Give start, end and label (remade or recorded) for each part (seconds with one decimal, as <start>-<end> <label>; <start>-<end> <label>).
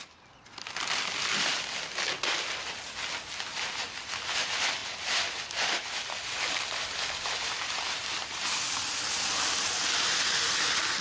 0.0-11.0 recorded